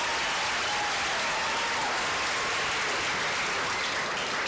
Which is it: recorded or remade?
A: recorded